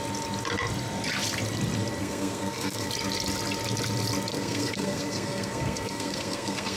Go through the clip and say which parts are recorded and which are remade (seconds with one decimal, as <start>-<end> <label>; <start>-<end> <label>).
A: 0.0-2.0 recorded; 2.0-2.9 remade; 2.9-4.3 recorded; 4.3-6.8 remade